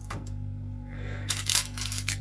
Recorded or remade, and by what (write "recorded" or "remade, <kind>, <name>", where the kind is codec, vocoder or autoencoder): remade, codec, SNAC